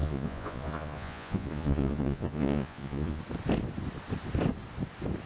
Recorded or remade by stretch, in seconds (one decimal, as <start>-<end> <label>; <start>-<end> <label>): 0.0-3.2 remade; 3.2-5.3 recorded